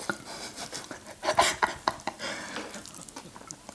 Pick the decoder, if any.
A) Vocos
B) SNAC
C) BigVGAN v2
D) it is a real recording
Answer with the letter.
D